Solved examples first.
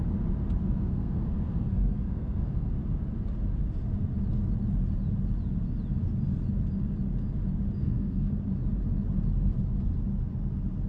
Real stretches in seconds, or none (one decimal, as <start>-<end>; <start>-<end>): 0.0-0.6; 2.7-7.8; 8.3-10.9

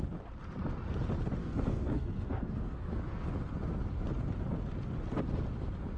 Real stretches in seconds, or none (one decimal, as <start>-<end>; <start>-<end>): 0.0-1.4; 2.9-6.0

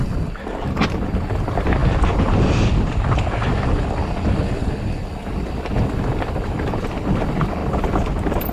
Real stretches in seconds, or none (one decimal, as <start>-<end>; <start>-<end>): 0.0-8.5

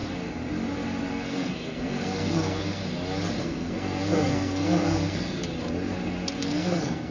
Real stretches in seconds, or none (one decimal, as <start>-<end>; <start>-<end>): 0.0-1.1; 2.8-3.4; 5.4-6.4

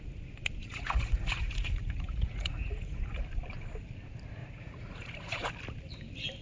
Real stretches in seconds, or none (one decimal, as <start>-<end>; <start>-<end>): 0.0-0.6; 3.2-4.4; 5.5-6.4

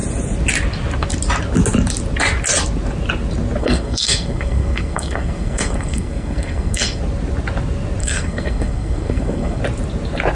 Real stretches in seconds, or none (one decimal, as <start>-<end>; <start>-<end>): 0.0-3.6; 7.0-8.0; 9.6-10.3

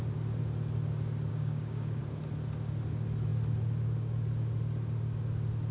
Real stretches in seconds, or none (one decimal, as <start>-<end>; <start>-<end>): 0.0-1.3; 2.0-5.7